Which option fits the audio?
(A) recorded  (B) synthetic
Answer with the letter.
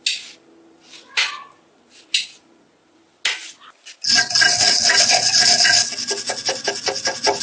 A